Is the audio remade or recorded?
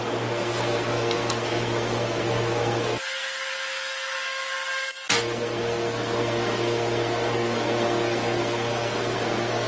remade